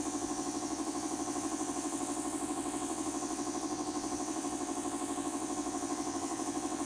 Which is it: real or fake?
fake